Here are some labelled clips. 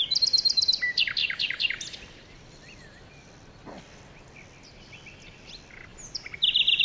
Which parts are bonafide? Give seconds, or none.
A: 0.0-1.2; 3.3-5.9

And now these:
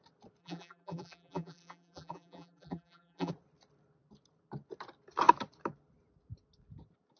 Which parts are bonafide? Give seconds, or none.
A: 0.0-0.4; 3.3-7.2

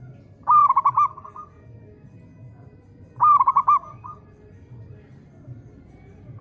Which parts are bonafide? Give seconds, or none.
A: 0.0-6.4

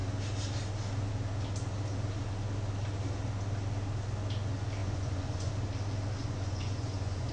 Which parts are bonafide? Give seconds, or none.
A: 0.0-4.8; 5.5-6.2

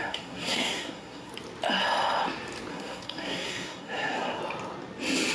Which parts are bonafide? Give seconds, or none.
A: 1.3-2.7; 4.4-5.3